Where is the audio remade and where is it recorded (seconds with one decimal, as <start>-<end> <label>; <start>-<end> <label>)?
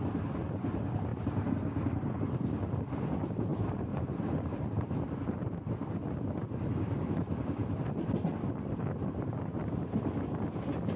0.0-3.5 recorded; 3.5-4.6 remade; 4.6-11.0 recorded